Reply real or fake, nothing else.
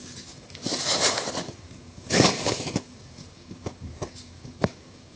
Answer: fake